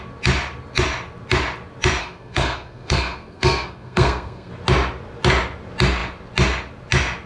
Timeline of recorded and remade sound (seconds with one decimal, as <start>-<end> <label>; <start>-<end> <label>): 0.0-2.0 recorded; 2.0-4.5 remade; 4.5-7.3 recorded

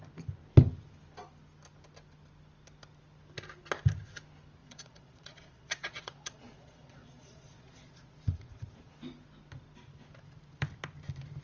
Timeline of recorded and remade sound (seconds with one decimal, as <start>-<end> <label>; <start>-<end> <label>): 0.0-4.6 recorded; 4.6-8.9 remade; 8.9-11.4 recorded

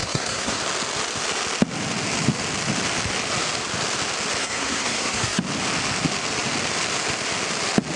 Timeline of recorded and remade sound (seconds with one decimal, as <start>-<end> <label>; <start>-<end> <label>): 0.0-0.6 remade; 0.6-4.4 recorded; 4.4-5.4 remade; 5.4-8.0 recorded

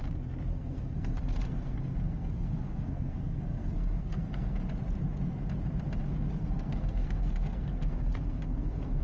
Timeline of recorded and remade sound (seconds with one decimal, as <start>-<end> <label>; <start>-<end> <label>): 0.0-0.5 recorded; 0.5-4.6 remade; 4.6-6.4 recorded; 6.4-9.0 remade

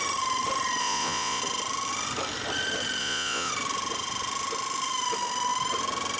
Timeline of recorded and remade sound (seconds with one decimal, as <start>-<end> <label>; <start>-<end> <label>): 0.0-0.8 recorded; 0.8-1.4 remade; 1.4-3.0 recorded; 3.0-3.5 remade; 3.5-6.2 recorded